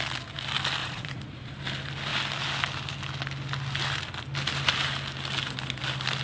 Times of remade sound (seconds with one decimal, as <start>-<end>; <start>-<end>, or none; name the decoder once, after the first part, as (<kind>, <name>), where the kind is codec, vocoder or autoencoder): 0.8-1.6 (vocoder, Vocos)